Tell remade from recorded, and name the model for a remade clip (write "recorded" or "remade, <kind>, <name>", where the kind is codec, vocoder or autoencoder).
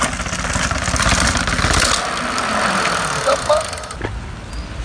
recorded